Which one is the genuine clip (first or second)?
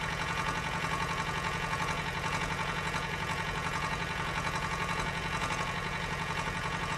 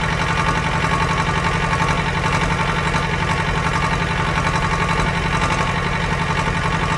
second